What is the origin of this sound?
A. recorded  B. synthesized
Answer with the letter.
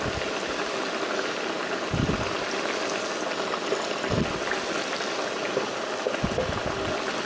A